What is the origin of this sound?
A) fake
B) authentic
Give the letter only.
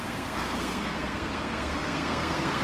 A